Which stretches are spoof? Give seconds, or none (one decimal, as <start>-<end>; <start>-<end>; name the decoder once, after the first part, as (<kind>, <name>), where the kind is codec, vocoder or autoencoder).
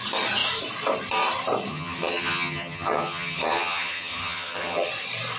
1.7-4.9 (vocoder, HiFi-GAN)